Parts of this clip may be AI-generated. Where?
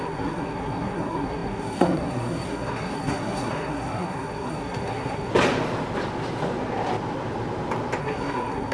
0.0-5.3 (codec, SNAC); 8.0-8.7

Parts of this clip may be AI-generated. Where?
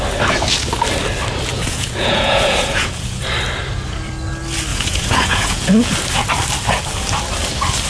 1.5-3.2 (vocoder, Vocos); 4.7-5.7